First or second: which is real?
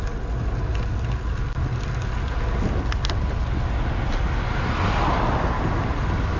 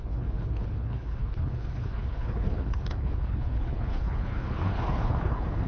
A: first